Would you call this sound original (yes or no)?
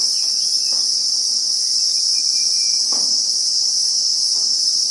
no